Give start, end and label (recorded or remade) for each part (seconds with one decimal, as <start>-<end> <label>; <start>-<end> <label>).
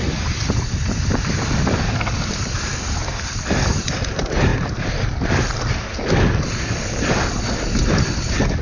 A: 0.0-8.6 recorded